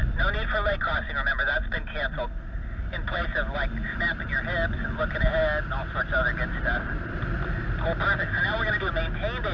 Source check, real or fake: real